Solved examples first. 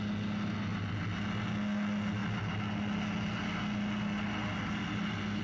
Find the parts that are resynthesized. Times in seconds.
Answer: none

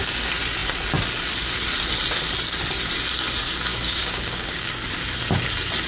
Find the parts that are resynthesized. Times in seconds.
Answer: 3.7-4.7 (codec, DAC)